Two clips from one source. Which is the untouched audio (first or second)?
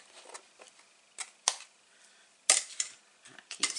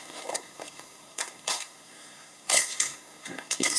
first